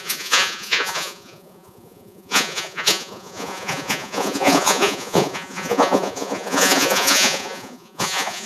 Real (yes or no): no